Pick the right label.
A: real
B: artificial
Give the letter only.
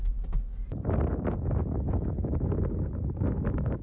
A